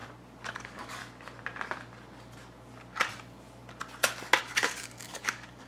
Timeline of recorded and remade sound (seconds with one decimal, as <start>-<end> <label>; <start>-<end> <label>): 0.0-0.5 recorded; 0.5-1.0 remade; 1.0-4.4 recorded; 4.4-5.7 remade